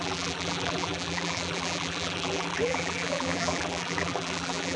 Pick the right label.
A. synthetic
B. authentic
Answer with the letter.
A